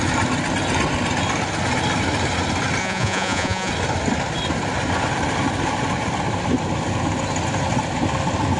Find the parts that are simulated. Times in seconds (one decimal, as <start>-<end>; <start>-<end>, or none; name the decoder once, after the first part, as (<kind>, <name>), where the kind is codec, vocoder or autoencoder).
2.8-3.7 (vocoder, Vocos)